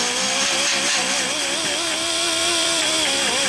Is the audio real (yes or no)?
no